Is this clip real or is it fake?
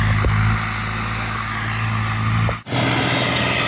real